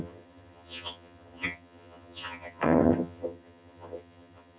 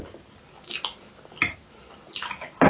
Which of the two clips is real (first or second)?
second